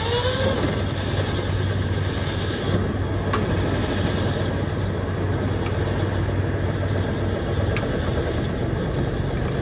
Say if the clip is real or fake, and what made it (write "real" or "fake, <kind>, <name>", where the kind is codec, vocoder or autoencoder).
real